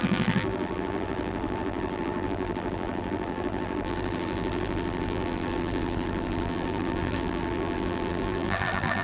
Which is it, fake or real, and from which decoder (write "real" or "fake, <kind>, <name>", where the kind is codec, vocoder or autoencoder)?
fake, vocoder, BigVGAN v2